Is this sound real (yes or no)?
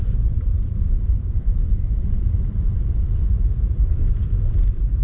no